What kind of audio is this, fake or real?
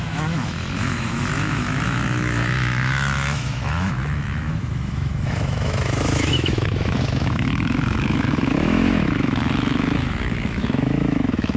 fake